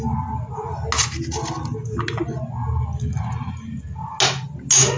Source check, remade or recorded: recorded